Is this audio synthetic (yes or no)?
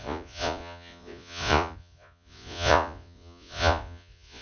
yes